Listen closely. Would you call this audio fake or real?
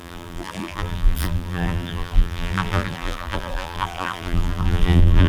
fake